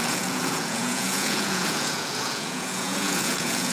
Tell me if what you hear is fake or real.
fake